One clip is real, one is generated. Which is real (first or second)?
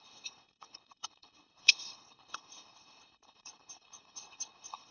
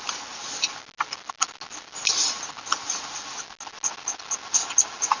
second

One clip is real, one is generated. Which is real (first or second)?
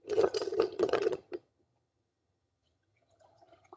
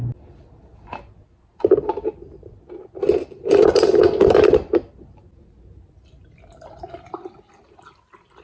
second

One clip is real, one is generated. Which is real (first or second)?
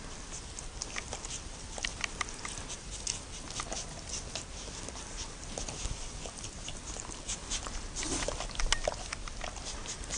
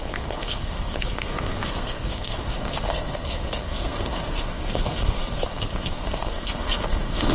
first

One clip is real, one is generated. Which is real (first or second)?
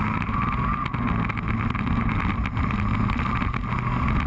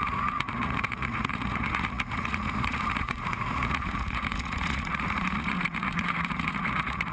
first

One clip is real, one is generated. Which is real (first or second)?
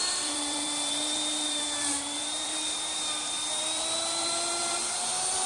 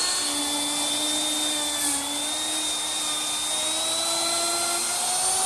second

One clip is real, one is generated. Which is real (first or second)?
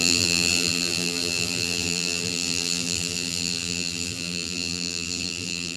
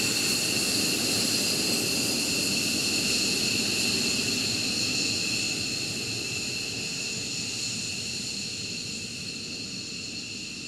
second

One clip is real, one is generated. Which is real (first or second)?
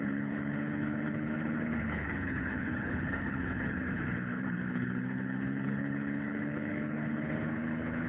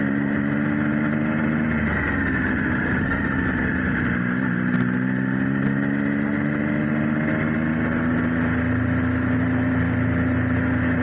second